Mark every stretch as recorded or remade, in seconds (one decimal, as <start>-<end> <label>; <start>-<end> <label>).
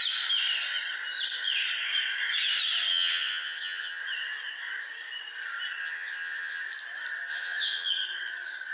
0.0-2.9 recorded; 2.9-4.0 remade; 4.0-5.8 recorded; 5.8-6.6 remade; 6.6-7.3 recorded; 7.3-7.9 remade; 7.9-8.7 recorded